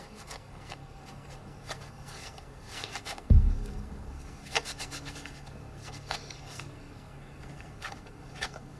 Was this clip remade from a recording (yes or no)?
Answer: yes